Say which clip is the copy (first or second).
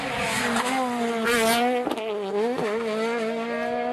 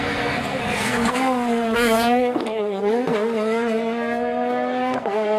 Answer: second